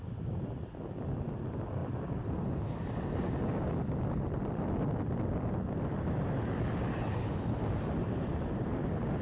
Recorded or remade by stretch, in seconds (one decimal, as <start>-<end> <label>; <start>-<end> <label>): 0.0-9.2 recorded